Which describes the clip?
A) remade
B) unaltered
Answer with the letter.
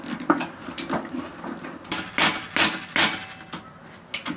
B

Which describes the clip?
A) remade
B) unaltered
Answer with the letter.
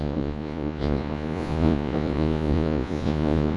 A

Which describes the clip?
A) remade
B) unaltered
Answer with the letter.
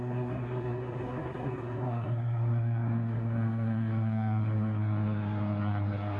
A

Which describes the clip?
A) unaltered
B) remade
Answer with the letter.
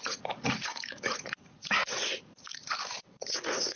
B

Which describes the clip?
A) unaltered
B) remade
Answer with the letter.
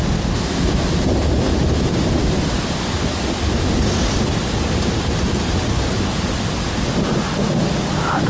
A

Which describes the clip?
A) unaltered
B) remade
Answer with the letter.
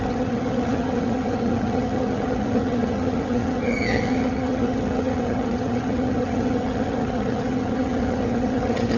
B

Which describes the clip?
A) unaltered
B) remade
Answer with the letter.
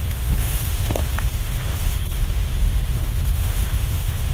B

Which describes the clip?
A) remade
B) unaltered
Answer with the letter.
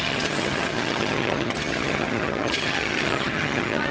A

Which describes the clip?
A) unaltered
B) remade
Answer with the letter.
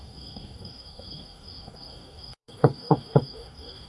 B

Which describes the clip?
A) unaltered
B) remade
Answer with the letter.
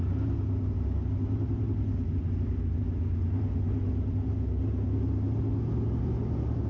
A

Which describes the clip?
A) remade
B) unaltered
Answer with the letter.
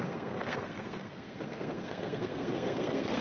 A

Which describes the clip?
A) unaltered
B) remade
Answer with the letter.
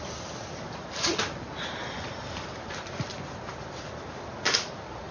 A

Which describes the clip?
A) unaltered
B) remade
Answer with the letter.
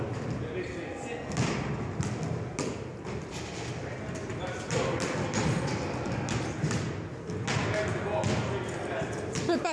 A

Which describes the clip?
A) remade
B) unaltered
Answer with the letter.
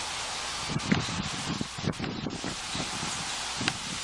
B